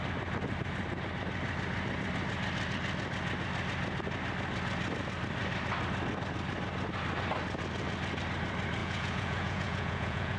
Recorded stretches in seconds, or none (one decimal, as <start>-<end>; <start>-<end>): 0.0-8.8